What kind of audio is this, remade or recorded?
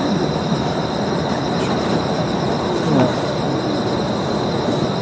remade